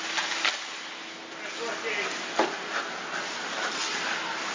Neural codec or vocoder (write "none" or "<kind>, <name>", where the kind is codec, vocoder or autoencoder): none